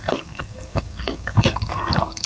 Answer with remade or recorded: remade